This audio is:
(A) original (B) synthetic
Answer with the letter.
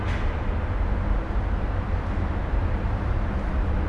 A